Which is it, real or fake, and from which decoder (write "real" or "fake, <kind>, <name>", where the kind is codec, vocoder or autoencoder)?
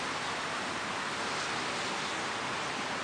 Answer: real